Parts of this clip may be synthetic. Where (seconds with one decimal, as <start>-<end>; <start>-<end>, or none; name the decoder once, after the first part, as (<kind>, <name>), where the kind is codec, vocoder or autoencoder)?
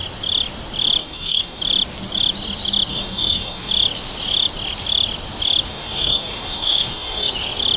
1.0-1.6 (codec, DAC); 2.9-3.7; 5.7-7.3